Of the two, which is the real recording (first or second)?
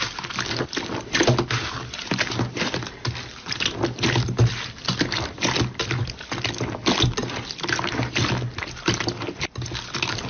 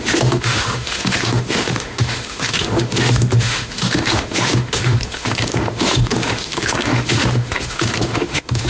first